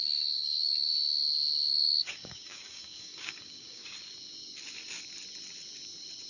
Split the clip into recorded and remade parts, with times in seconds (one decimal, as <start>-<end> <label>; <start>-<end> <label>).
0.0-0.9 remade; 0.9-1.7 recorded; 1.7-3.8 remade; 3.8-6.3 recorded